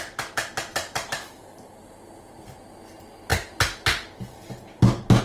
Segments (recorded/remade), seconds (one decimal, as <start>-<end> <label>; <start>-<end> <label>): 0.0-0.7 recorded; 0.7-2.0 remade; 2.0-5.2 recorded